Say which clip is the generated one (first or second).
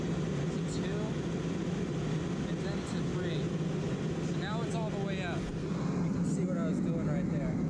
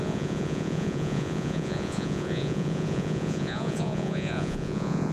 second